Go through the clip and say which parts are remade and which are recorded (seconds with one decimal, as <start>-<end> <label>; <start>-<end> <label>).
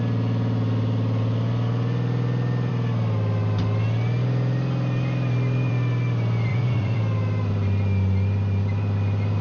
0.0-6.5 recorded; 6.5-7.0 remade; 7.0-9.4 recorded